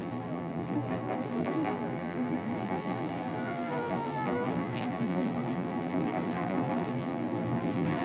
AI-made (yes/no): yes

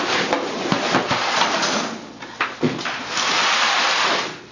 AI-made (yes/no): no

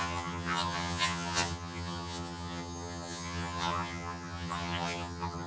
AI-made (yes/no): yes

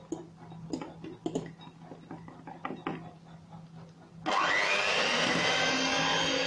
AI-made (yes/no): no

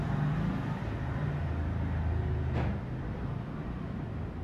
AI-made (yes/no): no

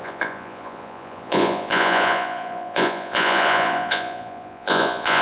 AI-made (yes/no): yes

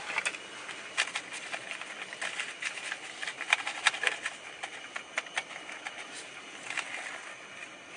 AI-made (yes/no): no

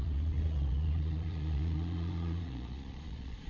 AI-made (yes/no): yes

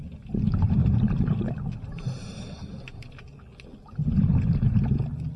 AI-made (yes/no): no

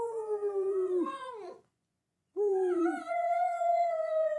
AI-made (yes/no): yes